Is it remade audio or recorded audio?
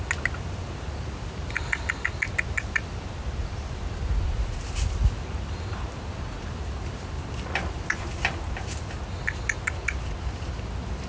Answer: recorded